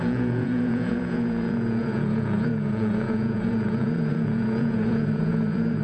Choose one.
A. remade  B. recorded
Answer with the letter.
A